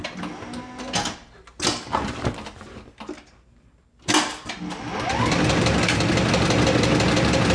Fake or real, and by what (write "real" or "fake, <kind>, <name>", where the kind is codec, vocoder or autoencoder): real